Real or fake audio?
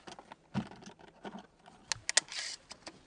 real